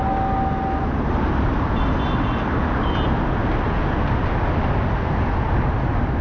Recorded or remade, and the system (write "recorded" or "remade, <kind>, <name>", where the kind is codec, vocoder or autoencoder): recorded